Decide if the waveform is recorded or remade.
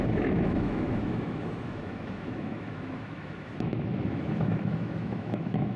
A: remade